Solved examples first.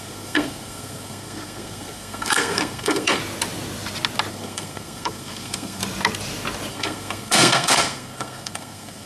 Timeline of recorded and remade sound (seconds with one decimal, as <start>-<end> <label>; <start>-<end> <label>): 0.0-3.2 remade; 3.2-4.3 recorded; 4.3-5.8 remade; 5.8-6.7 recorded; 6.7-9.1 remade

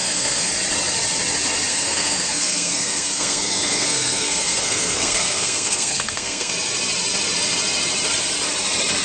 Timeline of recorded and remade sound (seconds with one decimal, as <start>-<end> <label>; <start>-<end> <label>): 0.0-0.5 remade; 0.5-1.7 recorded; 1.7-6.5 remade; 6.5-9.0 recorded

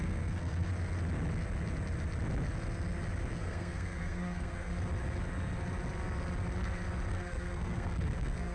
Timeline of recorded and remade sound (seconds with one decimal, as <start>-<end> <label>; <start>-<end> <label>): 0.0-0.7 remade; 0.7-3.3 recorded; 3.3-4.7 remade; 4.7-7.1 recorded; 7.1-8.5 remade

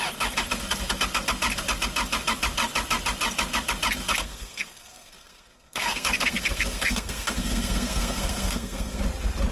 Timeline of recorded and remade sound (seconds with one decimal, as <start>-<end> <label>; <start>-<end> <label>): 0.0-4.2 recorded; 4.2-9.0 remade; 9.0-9.5 recorded

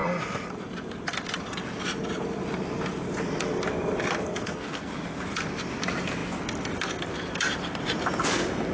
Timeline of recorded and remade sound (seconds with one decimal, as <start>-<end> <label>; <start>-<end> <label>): 0.0-4.3 recorded; 4.3-4.9 remade; 4.9-8.7 recorded

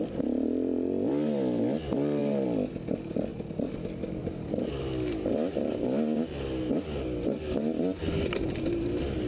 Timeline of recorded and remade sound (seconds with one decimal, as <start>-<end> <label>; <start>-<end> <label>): 0.0-9.3 recorded